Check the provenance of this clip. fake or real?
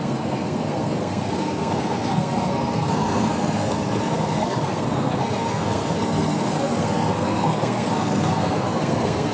fake